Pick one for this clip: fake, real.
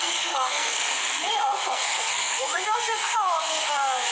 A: fake